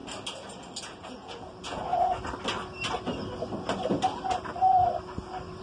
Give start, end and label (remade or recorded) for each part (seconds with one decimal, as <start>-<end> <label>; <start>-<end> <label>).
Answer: 0.0-0.8 recorded; 0.8-1.9 remade; 1.9-5.6 recorded